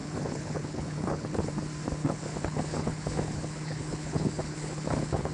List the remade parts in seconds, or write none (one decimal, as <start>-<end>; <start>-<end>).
0.0-1.5; 2.0-5.3